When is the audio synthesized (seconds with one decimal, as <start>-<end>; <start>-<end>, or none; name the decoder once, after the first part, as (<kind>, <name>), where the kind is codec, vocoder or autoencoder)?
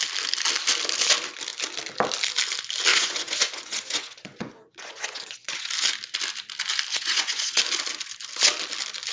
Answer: 2.9-5.7 (vocoder, Vocos); 6.9-7.6